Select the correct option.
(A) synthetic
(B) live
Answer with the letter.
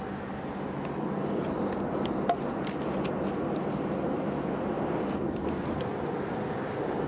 B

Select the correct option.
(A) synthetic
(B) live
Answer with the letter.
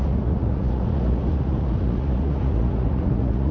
A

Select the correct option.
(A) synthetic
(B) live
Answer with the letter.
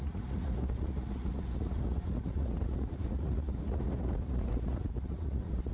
A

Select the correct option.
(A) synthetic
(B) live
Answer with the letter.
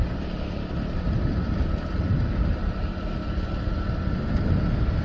B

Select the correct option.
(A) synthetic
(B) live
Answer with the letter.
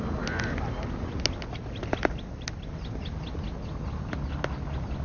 B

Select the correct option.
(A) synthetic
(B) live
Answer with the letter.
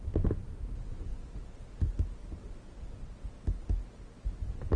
B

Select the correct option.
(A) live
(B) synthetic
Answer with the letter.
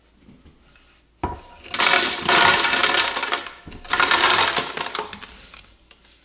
A